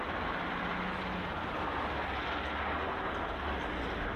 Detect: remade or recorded recorded